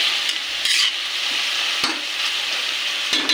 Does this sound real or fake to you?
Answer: real